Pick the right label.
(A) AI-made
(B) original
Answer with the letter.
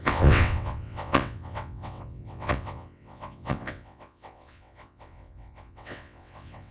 A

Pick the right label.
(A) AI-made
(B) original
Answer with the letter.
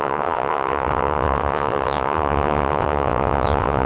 A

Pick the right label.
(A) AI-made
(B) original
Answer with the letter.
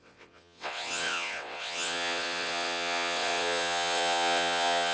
A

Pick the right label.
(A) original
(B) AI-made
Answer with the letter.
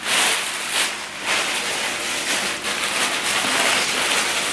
A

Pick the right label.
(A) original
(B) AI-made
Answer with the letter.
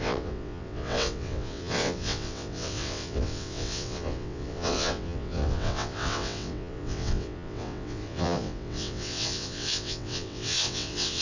B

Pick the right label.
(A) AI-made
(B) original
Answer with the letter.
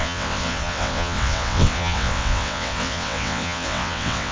A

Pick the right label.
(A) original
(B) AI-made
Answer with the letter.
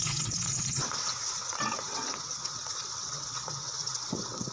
B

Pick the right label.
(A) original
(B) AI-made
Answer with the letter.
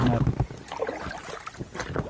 A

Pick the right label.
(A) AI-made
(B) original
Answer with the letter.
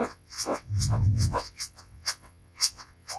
A